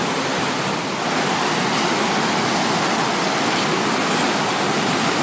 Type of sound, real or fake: real